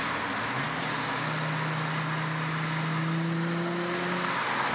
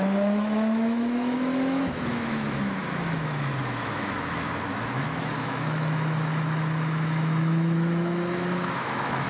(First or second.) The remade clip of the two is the second